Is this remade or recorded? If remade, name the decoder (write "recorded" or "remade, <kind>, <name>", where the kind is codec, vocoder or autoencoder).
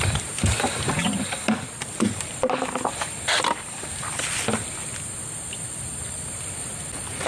recorded